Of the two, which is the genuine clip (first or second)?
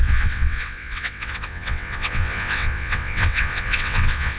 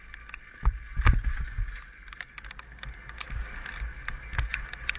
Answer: second